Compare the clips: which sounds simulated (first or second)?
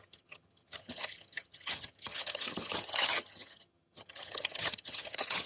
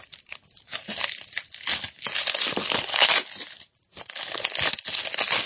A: first